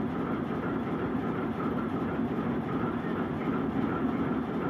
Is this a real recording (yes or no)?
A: yes